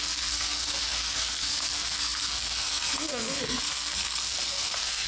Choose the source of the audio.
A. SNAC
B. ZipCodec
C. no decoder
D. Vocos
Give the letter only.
A